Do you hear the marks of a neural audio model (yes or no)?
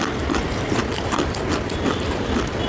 no